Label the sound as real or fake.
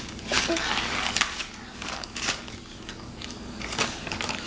fake